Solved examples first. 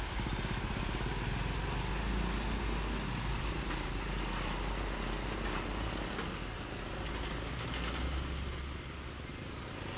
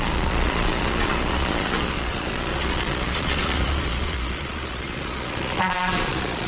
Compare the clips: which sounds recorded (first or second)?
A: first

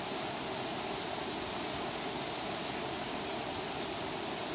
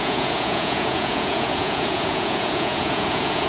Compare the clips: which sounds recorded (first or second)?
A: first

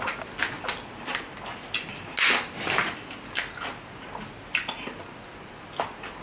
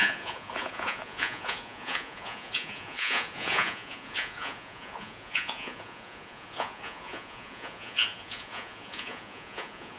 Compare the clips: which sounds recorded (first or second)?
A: first